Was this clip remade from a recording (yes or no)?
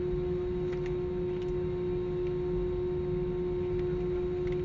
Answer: no